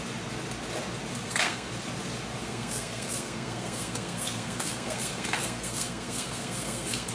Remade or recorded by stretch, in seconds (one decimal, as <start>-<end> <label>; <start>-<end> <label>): 0.0-1.1 recorded; 1.1-1.7 remade; 1.7-2.4 recorded; 2.4-7.1 remade